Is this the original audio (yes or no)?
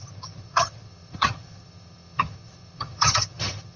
no